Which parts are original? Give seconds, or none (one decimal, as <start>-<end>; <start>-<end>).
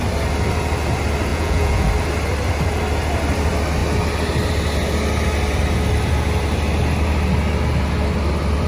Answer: 0.0-1.3; 1.9-8.7